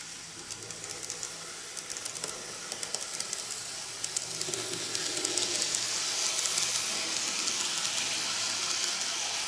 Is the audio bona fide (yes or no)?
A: yes